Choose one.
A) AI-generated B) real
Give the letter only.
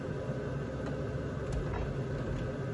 B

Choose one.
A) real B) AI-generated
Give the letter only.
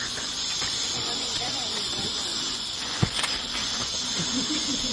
B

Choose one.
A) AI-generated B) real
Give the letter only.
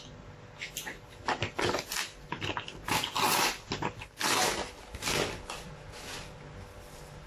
B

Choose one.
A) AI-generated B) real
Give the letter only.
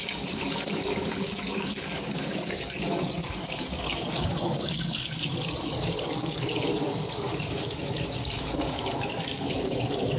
A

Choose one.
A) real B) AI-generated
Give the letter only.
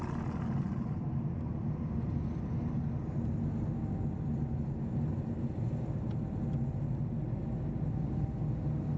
A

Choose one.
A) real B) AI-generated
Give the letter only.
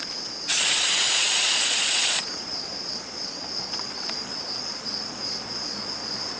B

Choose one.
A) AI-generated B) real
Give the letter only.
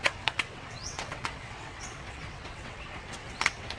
A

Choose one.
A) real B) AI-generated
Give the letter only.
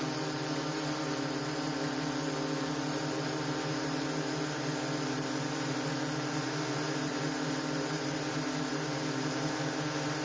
B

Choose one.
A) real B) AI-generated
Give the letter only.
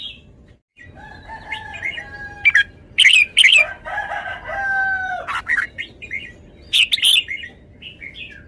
A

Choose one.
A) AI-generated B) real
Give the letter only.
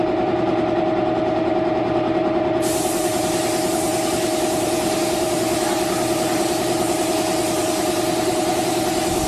A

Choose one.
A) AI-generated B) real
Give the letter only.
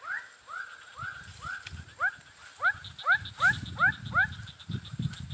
B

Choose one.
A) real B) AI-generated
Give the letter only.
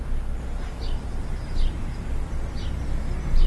A